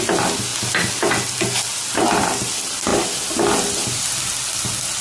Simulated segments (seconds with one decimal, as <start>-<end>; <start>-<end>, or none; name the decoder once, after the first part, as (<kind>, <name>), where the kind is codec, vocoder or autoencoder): none